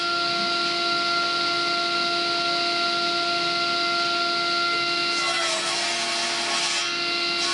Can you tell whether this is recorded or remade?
recorded